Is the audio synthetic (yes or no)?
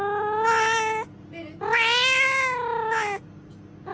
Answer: no